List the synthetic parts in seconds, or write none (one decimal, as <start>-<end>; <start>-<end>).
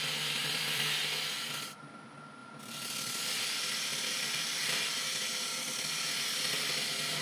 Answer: 0.4-1.0; 2.4-3.4; 3.9-5.5